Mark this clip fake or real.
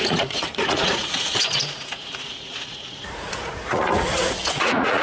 fake